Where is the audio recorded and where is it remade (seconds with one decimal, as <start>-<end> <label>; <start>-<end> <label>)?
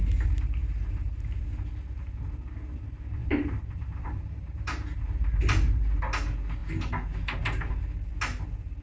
0.0-0.6 recorded; 0.6-1.4 remade; 1.4-3.2 recorded; 3.2-6.0 remade; 6.0-8.8 recorded